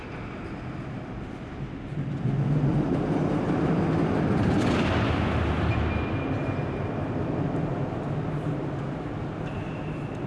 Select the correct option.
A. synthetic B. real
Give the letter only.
B